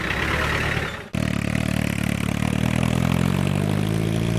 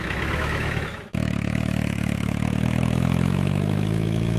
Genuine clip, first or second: first